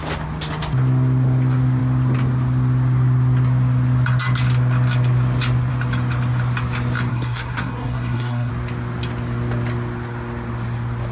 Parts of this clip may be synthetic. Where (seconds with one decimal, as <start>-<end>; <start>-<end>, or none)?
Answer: 7.1-8.5